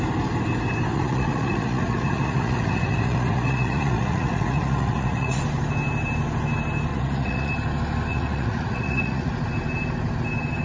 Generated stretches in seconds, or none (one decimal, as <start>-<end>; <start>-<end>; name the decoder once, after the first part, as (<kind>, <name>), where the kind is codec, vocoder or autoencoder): 0.9-5.4 (vocoder, Vocos); 6.9-7.5; 8.1-9.3